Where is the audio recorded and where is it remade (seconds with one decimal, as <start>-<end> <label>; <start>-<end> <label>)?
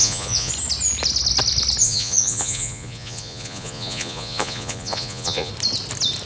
0.0-0.5 remade; 0.5-1.8 recorded; 1.8-5.5 remade; 5.5-6.3 recorded